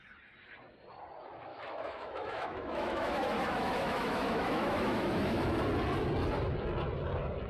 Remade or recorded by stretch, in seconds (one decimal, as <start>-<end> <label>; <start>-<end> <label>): 0.0-1.5 recorded; 1.5-5.6 remade; 5.6-7.5 recorded